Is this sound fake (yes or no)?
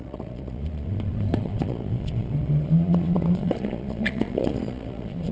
yes